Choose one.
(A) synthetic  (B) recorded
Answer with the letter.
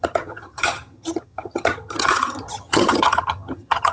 A